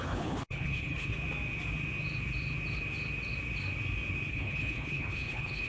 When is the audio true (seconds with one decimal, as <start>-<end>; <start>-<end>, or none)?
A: 1.1-4.3